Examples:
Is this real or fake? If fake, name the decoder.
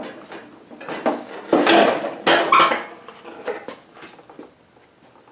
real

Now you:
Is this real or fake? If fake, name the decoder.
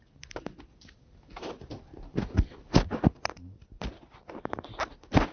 real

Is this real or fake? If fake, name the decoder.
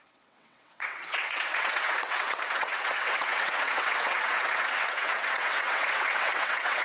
fake, vocoder, WaveNeXt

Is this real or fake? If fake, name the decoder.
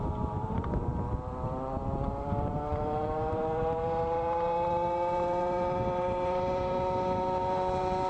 fake, vocoder, BigVGAN v2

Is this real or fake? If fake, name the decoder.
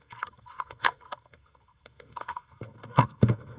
fake, codec, SNAC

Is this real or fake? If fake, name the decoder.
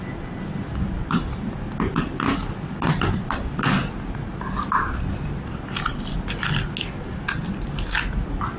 real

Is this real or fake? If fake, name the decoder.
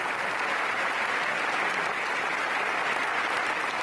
real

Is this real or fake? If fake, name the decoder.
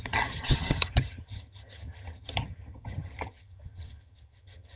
fake, vocoder, HiFi-GAN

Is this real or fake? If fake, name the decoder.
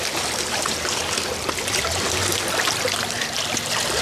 real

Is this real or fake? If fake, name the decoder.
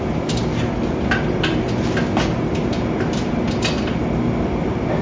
real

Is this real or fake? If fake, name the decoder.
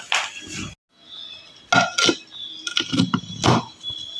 real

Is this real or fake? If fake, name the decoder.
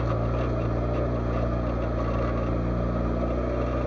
real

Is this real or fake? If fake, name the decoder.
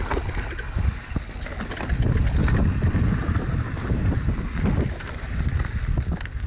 real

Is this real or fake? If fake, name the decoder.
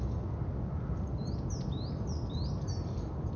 real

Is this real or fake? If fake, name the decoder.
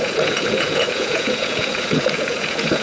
fake, vocoder, Vocos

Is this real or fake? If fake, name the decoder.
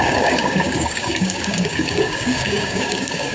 fake, codec, DAC